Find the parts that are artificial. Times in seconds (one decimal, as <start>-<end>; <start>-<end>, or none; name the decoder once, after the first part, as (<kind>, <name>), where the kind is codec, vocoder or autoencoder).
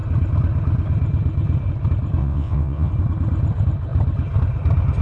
2.2-2.9 (vocoder, WaveNeXt)